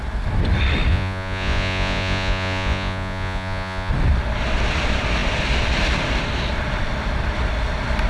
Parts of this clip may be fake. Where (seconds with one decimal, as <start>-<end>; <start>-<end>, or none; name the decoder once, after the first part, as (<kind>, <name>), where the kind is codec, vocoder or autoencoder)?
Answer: 0.9-3.9 (vocoder, Vocos)